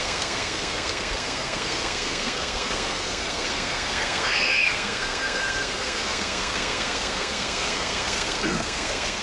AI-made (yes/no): yes